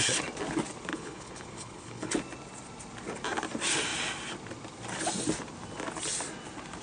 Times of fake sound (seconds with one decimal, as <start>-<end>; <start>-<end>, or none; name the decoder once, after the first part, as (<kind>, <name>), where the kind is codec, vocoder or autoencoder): 0.9-2.1 (codec, HILCodec)